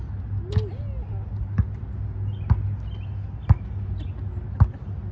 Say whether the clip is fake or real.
real